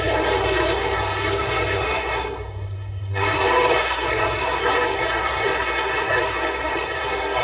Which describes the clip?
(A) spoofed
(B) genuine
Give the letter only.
A